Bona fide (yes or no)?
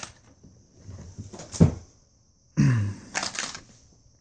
yes